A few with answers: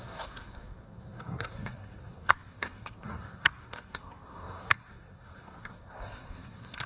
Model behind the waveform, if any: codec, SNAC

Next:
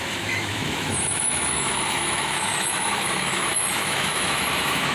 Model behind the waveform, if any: autoencoder, DAC-VAE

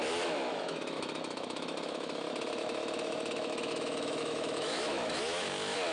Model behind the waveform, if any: autoencoder, DAC-VAE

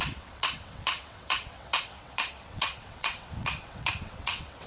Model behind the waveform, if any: vocoder, WaveNeXt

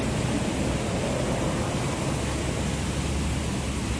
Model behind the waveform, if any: none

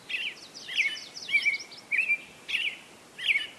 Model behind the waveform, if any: none